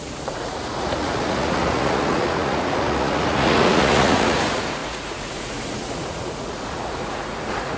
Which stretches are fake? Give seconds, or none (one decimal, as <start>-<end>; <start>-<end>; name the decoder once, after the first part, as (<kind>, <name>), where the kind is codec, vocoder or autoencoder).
0.0-7.8 (vocoder, Vocos)